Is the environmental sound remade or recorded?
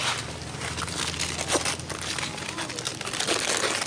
recorded